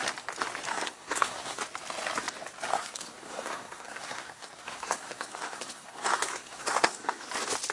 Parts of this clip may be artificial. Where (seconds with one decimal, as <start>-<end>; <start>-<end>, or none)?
0.7-1.6; 2.7-7.3